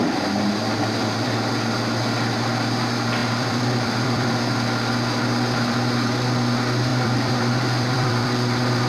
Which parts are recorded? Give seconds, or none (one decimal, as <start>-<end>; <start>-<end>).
0.0-3.2; 4.3-6.9